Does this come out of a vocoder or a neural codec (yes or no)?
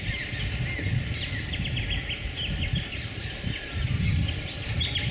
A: no